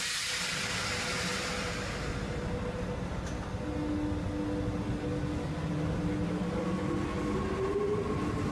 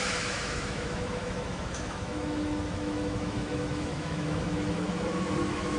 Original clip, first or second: first